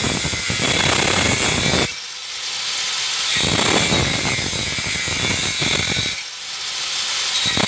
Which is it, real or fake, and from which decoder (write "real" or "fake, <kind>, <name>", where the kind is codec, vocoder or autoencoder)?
real